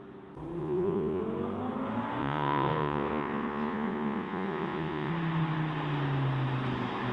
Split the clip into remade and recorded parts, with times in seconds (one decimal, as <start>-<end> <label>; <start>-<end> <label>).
0.0-0.6 recorded; 0.6-1.2 remade; 1.2-2.2 recorded; 2.2-5.1 remade; 5.1-7.1 recorded

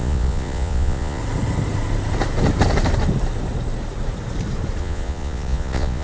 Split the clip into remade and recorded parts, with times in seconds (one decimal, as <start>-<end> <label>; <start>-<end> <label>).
0.0-1.2 remade; 1.2-4.8 recorded; 4.8-6.0 remade

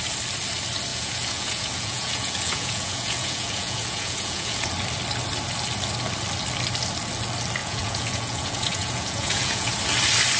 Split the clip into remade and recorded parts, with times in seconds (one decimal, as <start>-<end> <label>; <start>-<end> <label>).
0.0-0.9 recorded; 0.9-4.7 remade; 4.7-7.6 recorded; 7.6-9.7 remade; 9.7-10.4 recorded

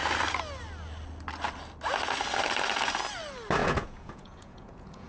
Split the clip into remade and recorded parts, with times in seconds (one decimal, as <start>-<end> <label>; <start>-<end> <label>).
0.0-3.6 recorded; 3.6-5.1 remade

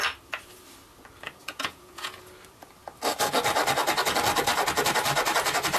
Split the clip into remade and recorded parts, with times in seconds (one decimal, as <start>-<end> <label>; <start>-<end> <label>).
0.0-1.4 recorded; 1.4-2.2 remade; 2.2-5.8 recorded